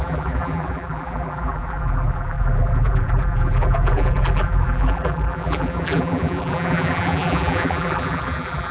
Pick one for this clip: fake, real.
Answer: fake